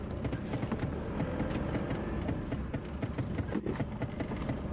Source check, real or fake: real